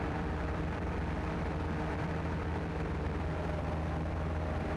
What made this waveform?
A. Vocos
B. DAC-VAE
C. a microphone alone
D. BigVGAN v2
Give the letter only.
D